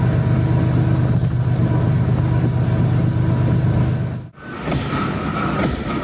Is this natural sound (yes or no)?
yes